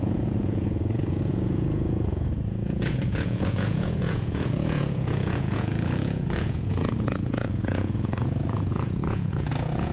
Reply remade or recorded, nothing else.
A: remade